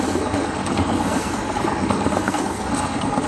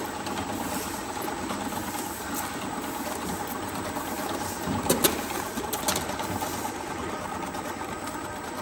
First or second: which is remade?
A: first